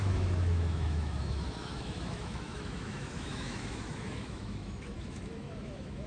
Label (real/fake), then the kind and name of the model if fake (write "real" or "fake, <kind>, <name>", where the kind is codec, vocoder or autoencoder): fake, autoencoder, DAC-VAE